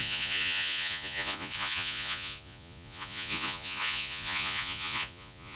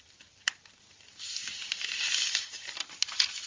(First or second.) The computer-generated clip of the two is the first